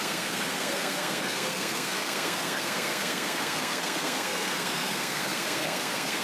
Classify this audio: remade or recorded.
remade